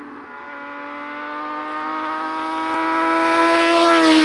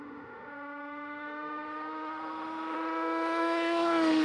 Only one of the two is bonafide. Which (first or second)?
first